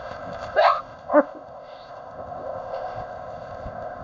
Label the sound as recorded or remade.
remade